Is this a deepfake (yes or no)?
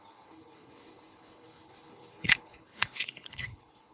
yes